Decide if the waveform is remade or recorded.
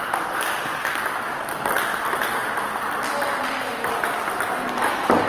recorded